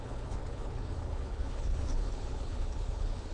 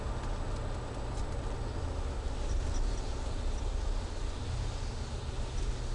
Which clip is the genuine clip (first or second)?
second